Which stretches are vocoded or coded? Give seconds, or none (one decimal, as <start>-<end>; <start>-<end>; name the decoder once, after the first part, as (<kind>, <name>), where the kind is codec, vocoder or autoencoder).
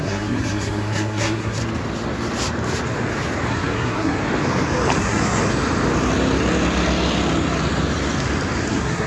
0.0-1.6 (codec, SNAC); 3.5-4.2; 5.0-5.4; 8.7-9.1